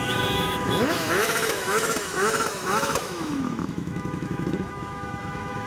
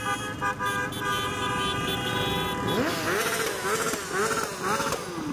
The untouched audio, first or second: second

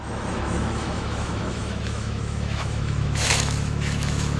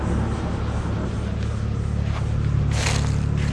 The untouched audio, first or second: second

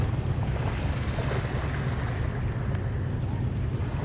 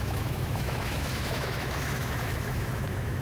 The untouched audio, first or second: first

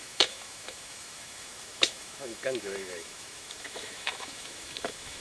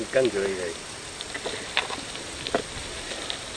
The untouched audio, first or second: second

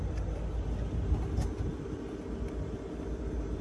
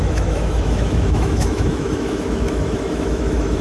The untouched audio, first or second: first